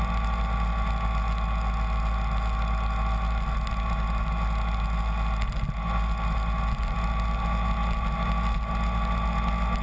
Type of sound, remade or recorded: recorded